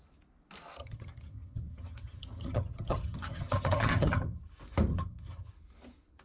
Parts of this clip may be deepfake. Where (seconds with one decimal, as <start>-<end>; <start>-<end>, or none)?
0.8-4.4; 4.9-5.5